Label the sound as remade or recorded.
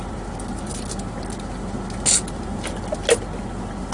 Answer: recorded